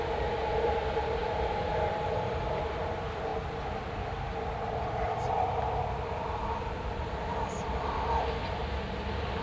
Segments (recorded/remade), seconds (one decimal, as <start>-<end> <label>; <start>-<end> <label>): 0.0-8.4 remade; 8.4-9.4 recorded